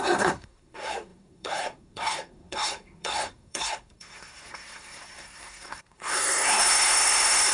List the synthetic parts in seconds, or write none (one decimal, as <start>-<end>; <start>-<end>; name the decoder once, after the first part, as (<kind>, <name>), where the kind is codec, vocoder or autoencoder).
0.0-7.5 (codec, SNAC)

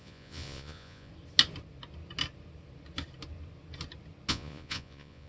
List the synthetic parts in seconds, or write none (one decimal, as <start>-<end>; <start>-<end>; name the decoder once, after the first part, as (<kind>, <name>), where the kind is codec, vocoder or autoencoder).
0.0-1.1 (vocoder, Vocos); 4.3-5.3

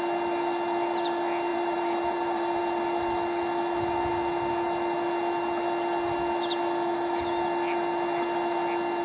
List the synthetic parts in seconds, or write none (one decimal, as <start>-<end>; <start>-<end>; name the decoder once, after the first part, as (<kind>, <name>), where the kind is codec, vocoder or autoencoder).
1.5-2.6 (vocoder, BigVGAN v2)

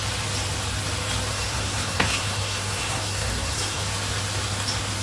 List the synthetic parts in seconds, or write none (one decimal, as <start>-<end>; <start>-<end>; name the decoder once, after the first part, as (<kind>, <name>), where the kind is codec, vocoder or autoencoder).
1.3-3.8 (codec, SNAC)

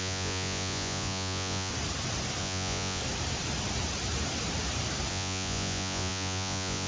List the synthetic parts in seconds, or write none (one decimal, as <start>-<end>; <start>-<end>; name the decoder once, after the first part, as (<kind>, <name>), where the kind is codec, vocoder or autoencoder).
0.0-1.7 (vocoder, Vocos); 2.4-3.0; 5.1-6.9

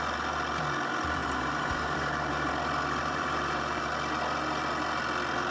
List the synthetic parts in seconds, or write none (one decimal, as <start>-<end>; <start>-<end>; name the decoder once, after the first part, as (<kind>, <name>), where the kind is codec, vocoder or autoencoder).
1.2-2.5 (vocoder, BigVGAN v2); 3.0-3.9

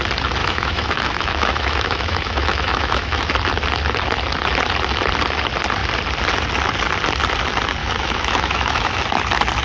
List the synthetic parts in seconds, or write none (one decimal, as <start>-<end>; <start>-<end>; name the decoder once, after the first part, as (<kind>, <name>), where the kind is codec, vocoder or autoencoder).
0.4-3.3 (autoencoder, DAC-VAE); 7.8-9.0

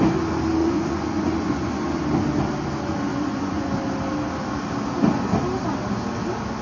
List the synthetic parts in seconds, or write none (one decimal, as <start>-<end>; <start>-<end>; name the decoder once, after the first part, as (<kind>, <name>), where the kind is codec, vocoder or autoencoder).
0.6-1.7 (vocoder, Vocos); 3.1-3.6